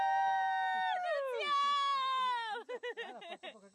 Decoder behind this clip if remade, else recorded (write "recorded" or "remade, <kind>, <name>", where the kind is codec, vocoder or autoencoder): recorded